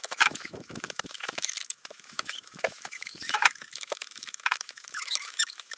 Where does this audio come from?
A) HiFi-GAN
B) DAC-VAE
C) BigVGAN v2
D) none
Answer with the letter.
B